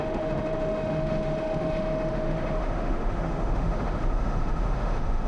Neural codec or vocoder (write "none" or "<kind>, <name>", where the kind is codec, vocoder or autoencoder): autoencoder, DAC-VAE